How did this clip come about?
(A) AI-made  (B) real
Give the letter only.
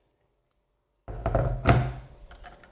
B